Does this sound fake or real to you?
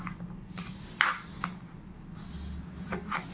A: real